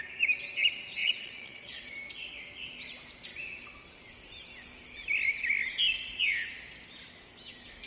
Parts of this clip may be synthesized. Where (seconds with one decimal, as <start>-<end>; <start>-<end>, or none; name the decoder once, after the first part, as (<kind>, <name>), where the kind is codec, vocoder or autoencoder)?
1.0-1.9 (vocoder, Vocos)

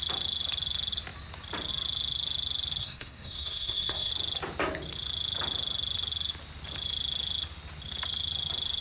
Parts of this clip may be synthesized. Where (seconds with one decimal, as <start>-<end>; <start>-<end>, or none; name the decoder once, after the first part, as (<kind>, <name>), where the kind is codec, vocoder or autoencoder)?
2.8-4.1 (codec, SNAC)

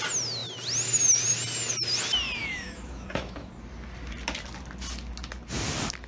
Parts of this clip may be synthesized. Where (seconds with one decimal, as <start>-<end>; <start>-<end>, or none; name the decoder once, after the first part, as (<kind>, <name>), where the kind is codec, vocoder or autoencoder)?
2.4-3.5 (autoencoder, DAC-VAE)

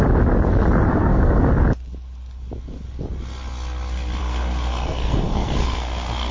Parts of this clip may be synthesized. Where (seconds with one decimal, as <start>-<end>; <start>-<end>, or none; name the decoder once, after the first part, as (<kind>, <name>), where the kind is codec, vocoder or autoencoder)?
0.9-1.5 (codec, SNAC); 4.2-6.3

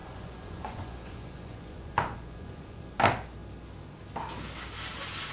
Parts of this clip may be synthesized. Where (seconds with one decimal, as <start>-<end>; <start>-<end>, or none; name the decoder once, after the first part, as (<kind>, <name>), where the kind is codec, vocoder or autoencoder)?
0.0-3.0 (vocoder, Vocos)

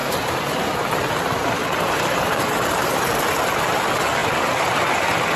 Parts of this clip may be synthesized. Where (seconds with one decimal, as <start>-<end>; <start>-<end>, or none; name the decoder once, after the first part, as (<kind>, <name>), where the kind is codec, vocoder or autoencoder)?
0.0-3.2 (vocoder, BigVGAN v2)

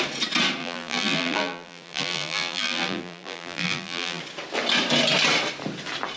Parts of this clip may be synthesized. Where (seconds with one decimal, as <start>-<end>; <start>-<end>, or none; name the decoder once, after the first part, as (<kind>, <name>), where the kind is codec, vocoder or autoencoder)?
0.6-4.2 (vocoder, BigVGAN v2)